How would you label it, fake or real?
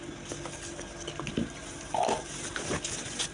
real